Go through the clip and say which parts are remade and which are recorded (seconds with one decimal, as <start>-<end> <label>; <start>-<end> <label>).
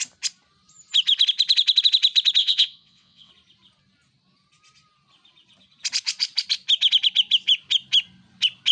0.0-2.4 recorded; 2.4-3.3 remade; 3.3-8.7 recorded